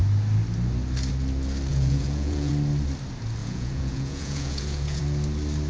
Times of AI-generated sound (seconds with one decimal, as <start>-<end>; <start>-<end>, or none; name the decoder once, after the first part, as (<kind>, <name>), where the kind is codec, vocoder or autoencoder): 1.7-2.5 (vocoder, Vocos); 3.4-5.0